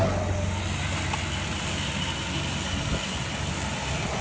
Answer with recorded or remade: recorded